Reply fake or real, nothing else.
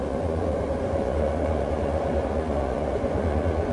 fake